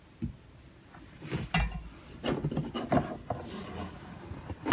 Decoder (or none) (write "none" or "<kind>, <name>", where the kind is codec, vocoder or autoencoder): none